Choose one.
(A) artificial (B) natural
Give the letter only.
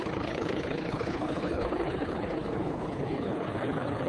A